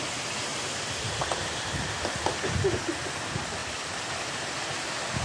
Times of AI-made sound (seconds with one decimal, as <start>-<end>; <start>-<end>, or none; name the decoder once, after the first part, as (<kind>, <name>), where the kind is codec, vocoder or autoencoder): 0.5-2.1 (vocoder, BigVGAN v2); 3.6-4.6

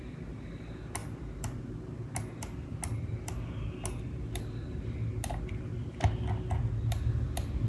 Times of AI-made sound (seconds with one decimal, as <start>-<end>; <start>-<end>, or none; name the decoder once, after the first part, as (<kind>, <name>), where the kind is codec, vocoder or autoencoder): none